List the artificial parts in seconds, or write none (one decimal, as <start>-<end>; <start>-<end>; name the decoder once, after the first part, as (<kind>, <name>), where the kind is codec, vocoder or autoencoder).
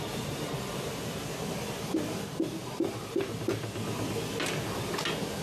none